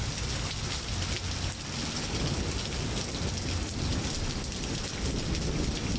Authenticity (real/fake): real